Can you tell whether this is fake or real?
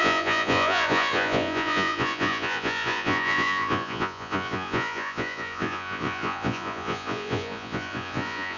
fake